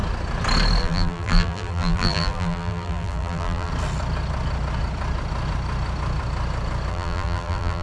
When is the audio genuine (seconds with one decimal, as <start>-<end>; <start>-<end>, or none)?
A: 0.0-0.8; 3.7-6.9